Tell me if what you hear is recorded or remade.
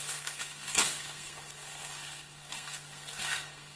remade